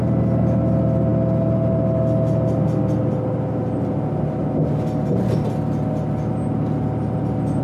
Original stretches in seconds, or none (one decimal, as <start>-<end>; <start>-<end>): 0.0-7.6